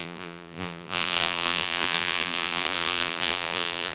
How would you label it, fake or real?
fake